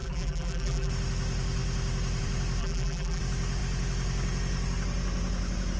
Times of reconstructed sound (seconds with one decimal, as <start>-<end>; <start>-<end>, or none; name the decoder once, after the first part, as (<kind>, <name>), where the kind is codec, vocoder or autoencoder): 0.0-0.9 (vocoder, BigVGAN v2); 2.6-3.2